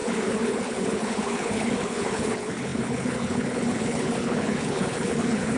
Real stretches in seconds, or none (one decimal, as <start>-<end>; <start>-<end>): none